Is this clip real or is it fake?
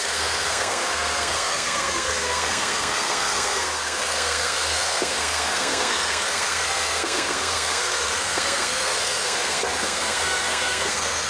fake